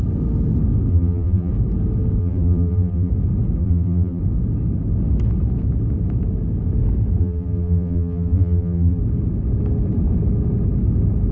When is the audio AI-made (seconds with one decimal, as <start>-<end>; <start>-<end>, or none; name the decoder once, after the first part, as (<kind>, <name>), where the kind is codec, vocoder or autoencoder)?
0.9-1.5 (vocoder, BigVGAN v2); 2.2-3.1; 3.6-4.2; 7.2-9.0